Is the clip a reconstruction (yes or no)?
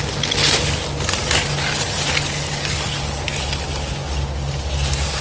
no